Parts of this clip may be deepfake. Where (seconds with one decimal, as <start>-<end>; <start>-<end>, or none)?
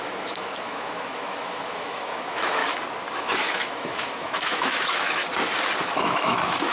0.0-2.6; 3.1-5.2; 5.8-6.7